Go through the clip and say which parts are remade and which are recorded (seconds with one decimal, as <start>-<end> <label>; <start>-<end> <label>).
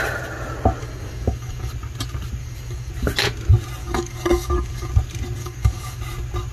0.0-0.8 recorded; 0.8-1.7 remade; 1.7-2.4 recorded; 2.4-2.9 remade; 2.9-3.8 recorded; 3.8-4.9 remade; 4.9-5.4 recorded; 5.4-6.0 remade; 6.0-6.5 recorded